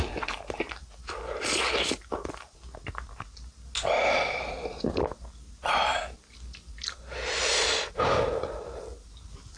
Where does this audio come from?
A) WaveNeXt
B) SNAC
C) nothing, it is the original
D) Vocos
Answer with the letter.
C